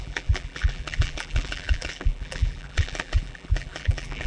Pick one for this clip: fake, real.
fake